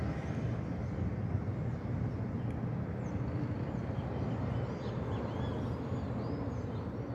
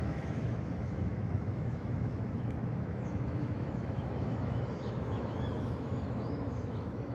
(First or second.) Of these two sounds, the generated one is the second